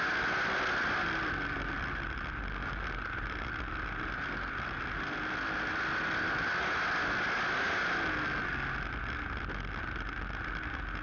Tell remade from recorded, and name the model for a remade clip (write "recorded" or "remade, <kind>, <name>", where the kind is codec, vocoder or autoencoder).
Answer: recorded